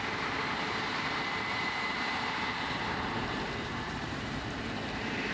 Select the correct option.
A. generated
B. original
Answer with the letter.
A